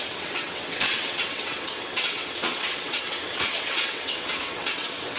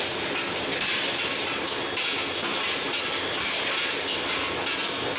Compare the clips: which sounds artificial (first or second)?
first